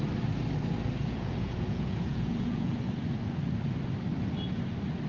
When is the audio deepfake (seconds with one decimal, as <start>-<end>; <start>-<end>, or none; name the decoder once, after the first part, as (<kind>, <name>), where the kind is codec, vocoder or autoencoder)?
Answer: 1.0-2.7 (vocoder, Vocos)